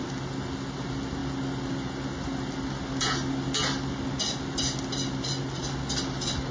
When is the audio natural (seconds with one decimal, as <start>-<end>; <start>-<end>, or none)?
0.0-6.5

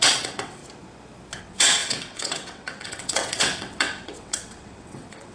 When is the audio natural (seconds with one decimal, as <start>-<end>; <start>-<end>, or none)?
0.6-1.4